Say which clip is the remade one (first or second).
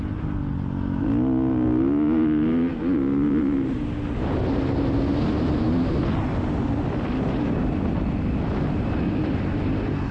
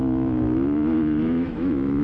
second